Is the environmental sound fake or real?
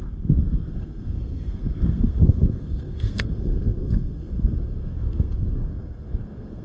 fake